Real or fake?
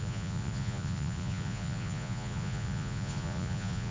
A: fake